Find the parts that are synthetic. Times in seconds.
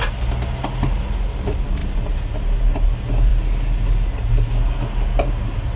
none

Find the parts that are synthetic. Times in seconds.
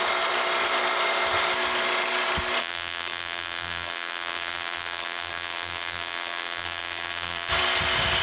2.6-7.5 (vocoder, BigVGAN v2)